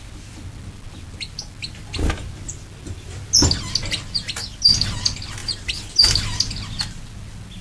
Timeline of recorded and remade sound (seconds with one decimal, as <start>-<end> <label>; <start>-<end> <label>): 0.0-7.6 recorded